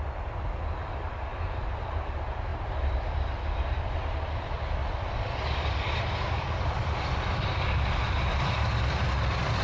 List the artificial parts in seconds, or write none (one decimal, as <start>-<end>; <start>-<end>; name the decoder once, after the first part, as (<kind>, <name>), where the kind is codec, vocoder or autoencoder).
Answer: none